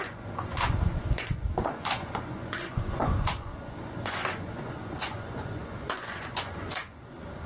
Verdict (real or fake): fake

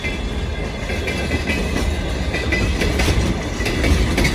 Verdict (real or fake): real